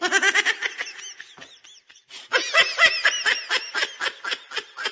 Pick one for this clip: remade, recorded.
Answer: recorded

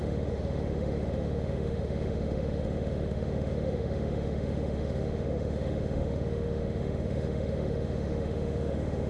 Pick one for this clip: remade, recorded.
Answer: remade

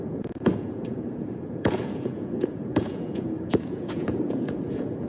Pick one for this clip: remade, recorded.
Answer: remade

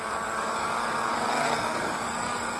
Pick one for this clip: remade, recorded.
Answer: remade